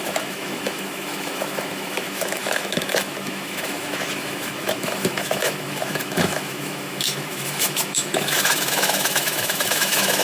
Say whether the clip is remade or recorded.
remade